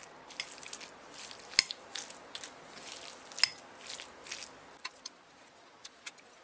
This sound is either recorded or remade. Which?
recorded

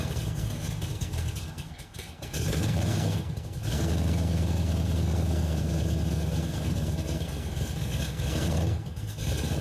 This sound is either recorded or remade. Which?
remade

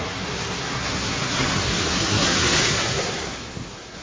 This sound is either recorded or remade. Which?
remade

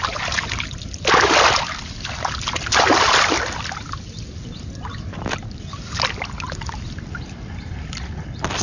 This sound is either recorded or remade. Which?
recorded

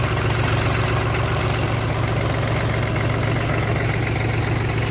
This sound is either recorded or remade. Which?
recorded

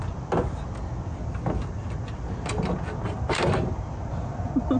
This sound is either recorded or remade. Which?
recorded